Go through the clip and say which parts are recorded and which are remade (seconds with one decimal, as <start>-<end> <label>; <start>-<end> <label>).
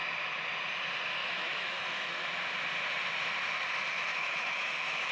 0.0-1.2 recorded; 1.2-2.5 remade; 2.5-4.1 recorded; 4.1-5.1 remade